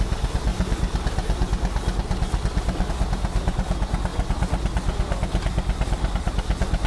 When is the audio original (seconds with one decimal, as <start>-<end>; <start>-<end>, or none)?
0.0-6.9